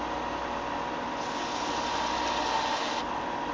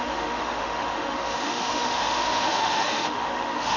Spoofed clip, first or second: second